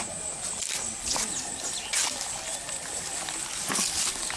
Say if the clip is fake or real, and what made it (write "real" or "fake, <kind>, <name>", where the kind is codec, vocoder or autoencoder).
real